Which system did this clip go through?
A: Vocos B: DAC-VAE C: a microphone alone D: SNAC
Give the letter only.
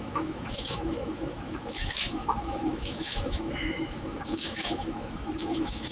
B